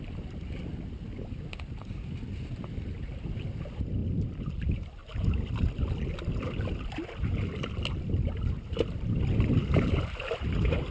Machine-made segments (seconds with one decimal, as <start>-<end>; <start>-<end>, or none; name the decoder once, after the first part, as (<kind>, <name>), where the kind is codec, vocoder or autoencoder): none